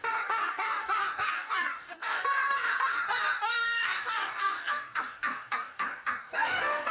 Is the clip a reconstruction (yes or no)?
yes